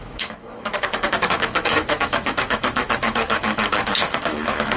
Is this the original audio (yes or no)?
no